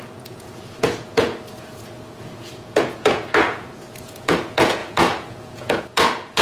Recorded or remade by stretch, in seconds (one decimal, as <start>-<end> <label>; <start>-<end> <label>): 0.0-6.4 remade

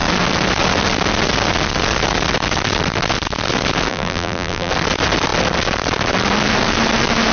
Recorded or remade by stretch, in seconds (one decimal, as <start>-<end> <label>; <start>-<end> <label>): 0.0-3.9 recorded; 3.9-4.7 remade; 4.7-7.3 recorded